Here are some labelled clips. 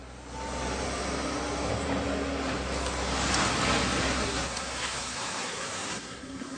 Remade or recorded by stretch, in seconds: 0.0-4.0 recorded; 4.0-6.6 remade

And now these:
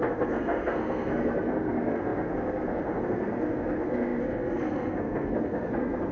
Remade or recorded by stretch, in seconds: 0.0-6.1 remade